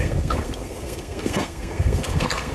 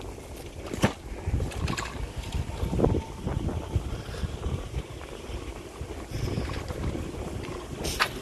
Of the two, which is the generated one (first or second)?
first